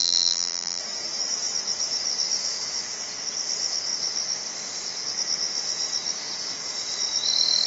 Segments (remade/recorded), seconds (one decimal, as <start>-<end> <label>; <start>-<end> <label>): 0.0-0.8 remade; 0.8-7.7 recorded